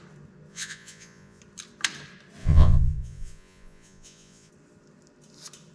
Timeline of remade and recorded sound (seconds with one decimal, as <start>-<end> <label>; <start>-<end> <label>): 0.0-0.5 recorded; 0.5-1.4 remade; 1.4-2.4 recorded; 2.4-4.5 remade; 4.5-5.7 recorded

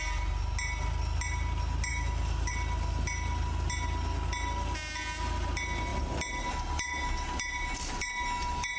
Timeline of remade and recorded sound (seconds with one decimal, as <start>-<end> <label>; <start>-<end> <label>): 0.0-1.9 recorded; 1.9-2.5 remade; 2.5-8.8 recorded